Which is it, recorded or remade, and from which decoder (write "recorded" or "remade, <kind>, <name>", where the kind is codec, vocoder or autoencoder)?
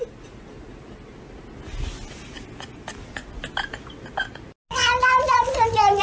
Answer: recorded